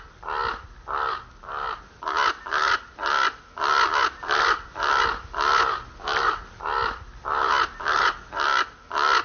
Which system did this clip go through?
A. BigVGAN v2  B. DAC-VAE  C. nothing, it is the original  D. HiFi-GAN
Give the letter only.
C